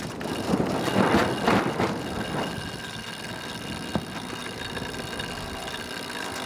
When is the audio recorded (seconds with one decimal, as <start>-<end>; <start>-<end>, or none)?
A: 0.0-6.5